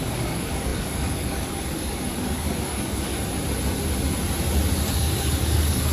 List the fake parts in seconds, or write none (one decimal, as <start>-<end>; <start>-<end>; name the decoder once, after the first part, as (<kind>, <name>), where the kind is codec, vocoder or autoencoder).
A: 0.0-3.1 (codec, DAC); 4.9-5.9